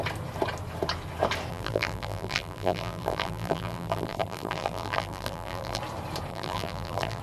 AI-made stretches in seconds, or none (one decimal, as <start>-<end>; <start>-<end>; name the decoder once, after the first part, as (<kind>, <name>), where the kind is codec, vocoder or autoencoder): 1.5-5.8 (vocoder, BigVGAN v2); 6.3-7.2